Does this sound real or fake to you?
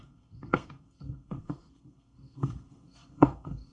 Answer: fake